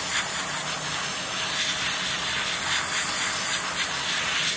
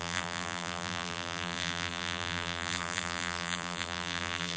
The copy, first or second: second